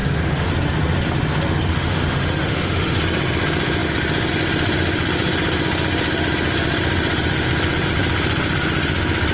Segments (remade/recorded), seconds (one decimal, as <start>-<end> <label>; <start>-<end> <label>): 0.0-0.5 remade; 0.5-1.7 recorded; 1.7-3.0 remade; 3.0-9.3 recorded